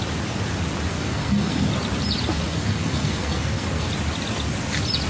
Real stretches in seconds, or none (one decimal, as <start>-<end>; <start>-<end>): 0.0-0.9; 1.7-2.3; 3.9-5.1